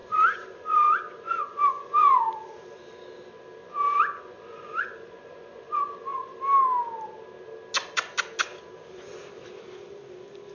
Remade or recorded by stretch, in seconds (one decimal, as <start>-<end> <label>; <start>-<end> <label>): 0.0-2.2 remade; 2.2-3.6 recorded; 3.6-6.4 remade; 6.4-10.5 recorded